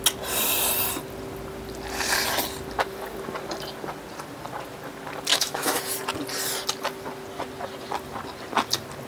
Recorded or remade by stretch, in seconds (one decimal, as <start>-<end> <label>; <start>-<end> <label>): 0.0-5.3 recorded; 5.3-5.8 remade; 5.8-9.1 recorded